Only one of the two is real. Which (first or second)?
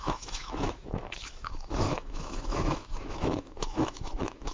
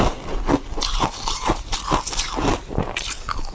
second